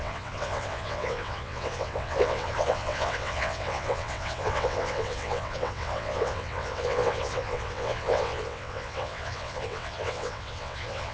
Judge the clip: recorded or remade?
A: remade